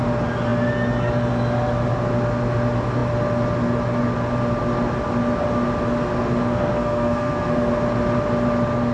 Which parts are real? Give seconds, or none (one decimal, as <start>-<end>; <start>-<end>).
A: 0.0-6.5; 7.7-8.9